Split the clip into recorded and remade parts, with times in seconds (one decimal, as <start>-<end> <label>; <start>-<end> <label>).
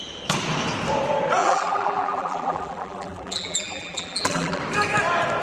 0.0-1.4 recorded; 1.4-4.6 remade; 4.6-5.4 recorded